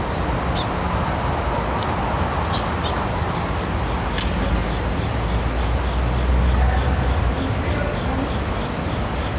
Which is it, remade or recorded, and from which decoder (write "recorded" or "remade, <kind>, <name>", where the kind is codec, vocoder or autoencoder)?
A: recorded